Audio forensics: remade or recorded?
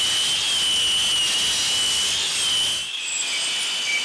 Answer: recorded